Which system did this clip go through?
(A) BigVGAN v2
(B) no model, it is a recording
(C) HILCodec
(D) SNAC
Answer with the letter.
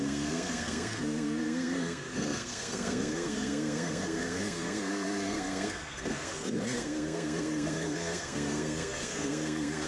D